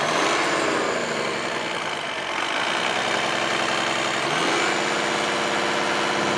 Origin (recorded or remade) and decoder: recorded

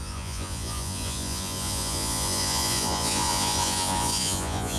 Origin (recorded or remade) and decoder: remade, vocoder, Vocos